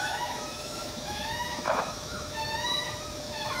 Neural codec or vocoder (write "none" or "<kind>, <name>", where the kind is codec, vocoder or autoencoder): autoencoder, DAC-VAE